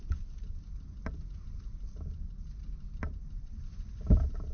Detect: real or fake real